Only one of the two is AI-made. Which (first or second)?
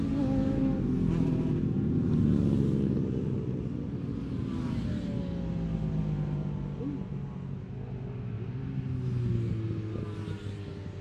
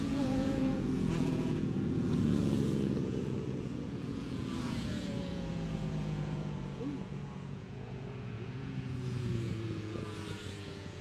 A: second